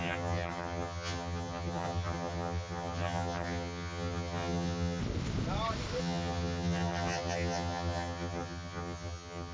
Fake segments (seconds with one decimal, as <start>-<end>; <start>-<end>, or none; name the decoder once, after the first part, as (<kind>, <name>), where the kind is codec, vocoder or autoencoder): 0.0-5.0 (vocoder, HiFi-GAN); 6.0-9.5